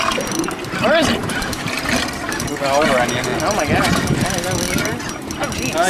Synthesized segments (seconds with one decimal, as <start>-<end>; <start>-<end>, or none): none